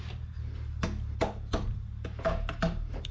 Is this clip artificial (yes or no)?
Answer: no